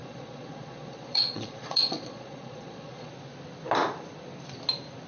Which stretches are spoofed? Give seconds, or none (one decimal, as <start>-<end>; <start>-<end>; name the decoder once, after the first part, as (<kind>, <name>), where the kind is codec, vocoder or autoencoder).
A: 0.0-3.1 (vocoder, Vocos)

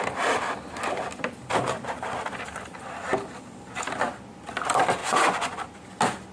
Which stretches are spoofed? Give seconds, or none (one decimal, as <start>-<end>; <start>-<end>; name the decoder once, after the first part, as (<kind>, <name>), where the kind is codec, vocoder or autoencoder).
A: 5.0-5.6 (vocoder, Vocos)

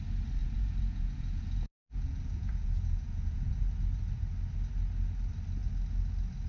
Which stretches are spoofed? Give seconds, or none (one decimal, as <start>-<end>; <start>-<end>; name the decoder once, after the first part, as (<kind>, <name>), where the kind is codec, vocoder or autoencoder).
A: 0.4-3.5 (vocoder, Vocos)

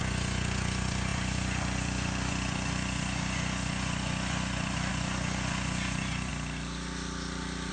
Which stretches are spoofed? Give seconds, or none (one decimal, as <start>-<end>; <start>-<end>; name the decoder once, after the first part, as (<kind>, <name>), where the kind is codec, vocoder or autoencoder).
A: 0.0-6.3 (vocoder, Vocos)

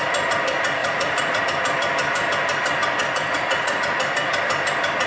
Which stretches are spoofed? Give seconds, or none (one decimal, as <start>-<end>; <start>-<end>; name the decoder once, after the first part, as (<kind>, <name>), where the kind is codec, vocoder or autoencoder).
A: 0.8-1.4 (vocoder, Vocos); 3.2-3.8